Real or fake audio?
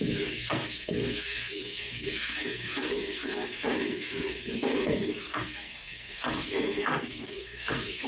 fake